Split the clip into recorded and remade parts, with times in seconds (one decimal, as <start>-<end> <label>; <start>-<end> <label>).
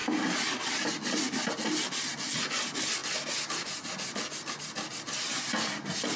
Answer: 0.0-6.2 recorded